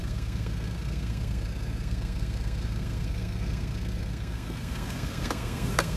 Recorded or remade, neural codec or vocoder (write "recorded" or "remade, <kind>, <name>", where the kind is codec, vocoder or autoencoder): remade, codec, SNAC